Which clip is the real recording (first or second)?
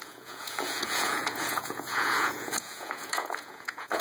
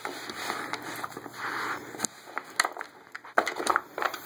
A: second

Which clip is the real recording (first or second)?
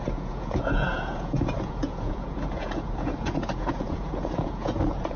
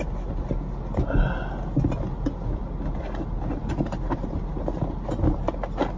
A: second